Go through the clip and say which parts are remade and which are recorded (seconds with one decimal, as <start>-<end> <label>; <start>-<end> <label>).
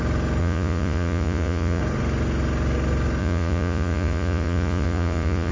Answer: 0.0-0.4 recorded; 0.4-1.8 remade; 1.8-3.2 recorded; 3.2-5.5 remade